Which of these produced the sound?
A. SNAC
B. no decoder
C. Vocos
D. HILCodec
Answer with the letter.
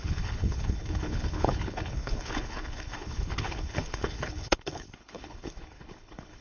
D